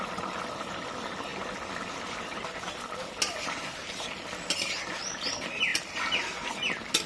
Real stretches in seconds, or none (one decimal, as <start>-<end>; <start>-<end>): 0.0-7.1